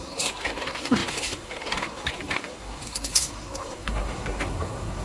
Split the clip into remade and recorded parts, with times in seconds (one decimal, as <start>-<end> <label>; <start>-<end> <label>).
0.0-5.0 remade

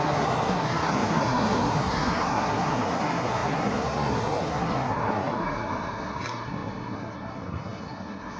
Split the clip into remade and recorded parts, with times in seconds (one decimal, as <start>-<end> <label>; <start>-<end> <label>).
0.0-8.4 remade

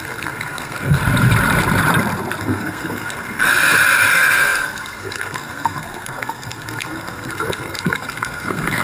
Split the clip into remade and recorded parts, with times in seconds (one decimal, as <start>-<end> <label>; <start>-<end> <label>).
0.0-1.0 remade; 1.0-2.4 recorded; 2.4-3.5 remade; 3.5-4.1 recorded; 4.1-8.8 remade

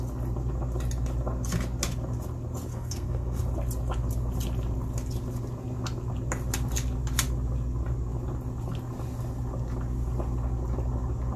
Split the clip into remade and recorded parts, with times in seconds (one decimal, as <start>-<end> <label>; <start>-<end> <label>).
0.0-2.7 recorded; 2.7-3.4 remade; 3.4-11.4 recorded

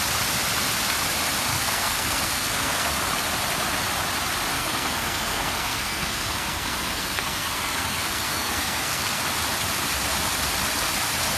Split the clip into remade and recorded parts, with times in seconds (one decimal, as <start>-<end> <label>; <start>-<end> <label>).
0.0-1.5 recorded; 1.5-3.1 remade; 3.1-4.5 recorded; 4.5-9.2 remade; 9.2-11.4 recorded